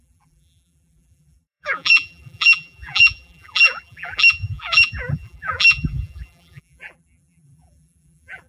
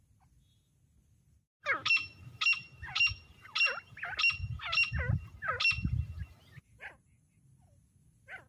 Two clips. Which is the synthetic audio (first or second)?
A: first